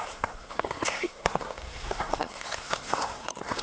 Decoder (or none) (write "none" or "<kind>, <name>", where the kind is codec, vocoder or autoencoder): codec, SNAC